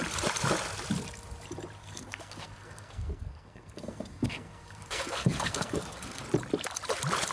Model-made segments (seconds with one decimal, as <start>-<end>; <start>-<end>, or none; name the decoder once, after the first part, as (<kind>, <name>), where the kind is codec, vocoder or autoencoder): 1.8-6.2 (codec, SNAC)